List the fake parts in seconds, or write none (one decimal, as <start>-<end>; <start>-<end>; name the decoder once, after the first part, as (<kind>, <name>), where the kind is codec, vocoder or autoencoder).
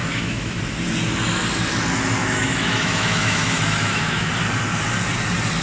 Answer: 0.0-0.6 (autoencoder, DAC-VAE); 2.2-4.3